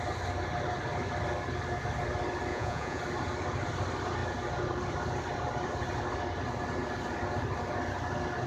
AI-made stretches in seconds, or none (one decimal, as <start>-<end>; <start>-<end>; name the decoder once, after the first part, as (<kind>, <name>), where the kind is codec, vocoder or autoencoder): 2.5-3.0 (vocoder, Vocos)